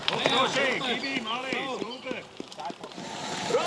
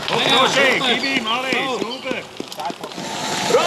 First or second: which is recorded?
second